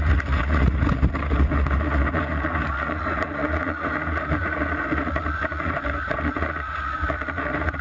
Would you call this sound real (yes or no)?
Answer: no